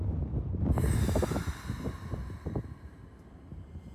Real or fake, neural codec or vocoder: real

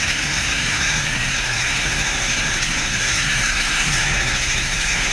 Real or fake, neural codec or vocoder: fake, codec, SNAC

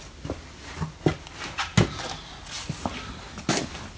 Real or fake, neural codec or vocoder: real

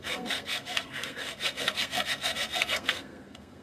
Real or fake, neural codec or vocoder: fake, codec, SNAC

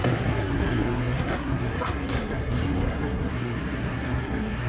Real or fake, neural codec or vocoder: fake, codec, SNAC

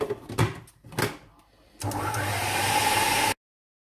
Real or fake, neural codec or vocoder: real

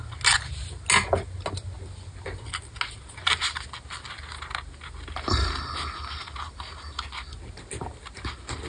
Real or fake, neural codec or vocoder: real